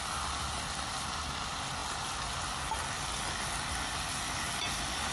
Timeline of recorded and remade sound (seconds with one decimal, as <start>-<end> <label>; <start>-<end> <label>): 0.0-5.1 recorded